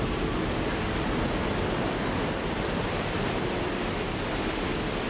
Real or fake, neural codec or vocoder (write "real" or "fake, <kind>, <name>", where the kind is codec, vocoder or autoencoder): real